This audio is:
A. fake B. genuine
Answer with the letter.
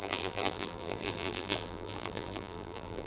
A